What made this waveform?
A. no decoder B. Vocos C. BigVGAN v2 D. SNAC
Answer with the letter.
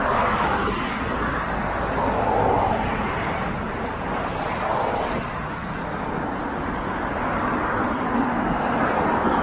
A